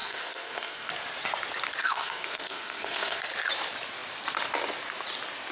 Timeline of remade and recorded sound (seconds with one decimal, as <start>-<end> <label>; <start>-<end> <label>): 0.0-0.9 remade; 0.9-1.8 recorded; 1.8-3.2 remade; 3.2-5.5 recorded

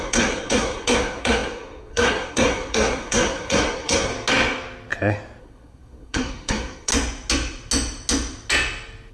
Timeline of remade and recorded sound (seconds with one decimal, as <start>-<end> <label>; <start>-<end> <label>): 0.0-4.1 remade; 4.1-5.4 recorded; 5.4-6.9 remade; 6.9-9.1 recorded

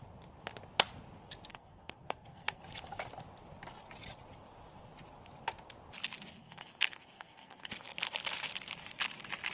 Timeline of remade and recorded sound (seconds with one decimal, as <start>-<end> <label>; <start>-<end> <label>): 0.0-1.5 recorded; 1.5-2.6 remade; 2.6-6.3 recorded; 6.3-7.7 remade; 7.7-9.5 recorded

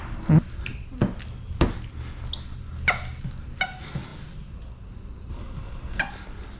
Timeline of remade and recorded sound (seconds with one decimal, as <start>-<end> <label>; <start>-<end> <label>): 0.0-5.3 recorded; 5.3-6.0 remade; 6.0-6.6 recorded

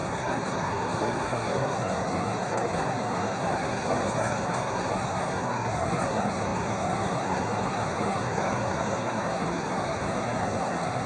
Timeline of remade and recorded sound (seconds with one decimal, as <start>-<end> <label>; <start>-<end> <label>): 0.0-11.1 remade